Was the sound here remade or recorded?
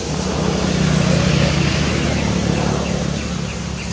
recorded